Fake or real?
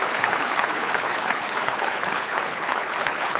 fake